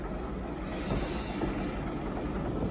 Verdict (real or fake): real